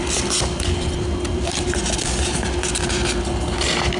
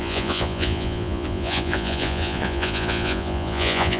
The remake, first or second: second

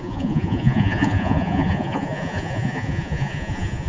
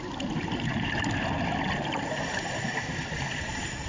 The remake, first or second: first